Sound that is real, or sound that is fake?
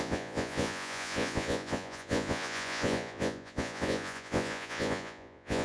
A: fake